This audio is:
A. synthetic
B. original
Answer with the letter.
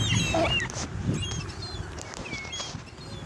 B